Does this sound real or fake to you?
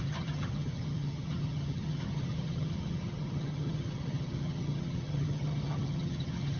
fake